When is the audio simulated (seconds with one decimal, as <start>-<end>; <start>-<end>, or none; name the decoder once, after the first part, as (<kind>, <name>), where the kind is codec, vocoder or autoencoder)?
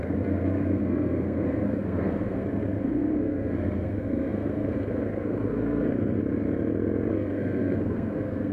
0.0-6.2 (codec, SNAC); 7.1-8.5